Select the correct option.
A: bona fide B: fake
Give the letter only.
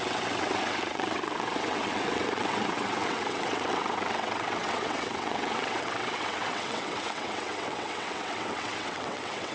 B